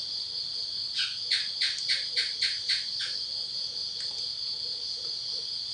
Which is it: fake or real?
real